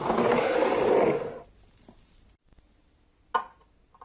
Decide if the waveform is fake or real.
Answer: real